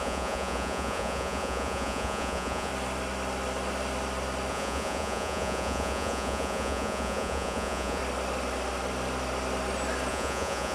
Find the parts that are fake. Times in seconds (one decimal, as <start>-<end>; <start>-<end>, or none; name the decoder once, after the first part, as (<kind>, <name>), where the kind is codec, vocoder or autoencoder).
0.0-2.7 (vocoder, Vocos); 4.5-8.0; 10.1-10.7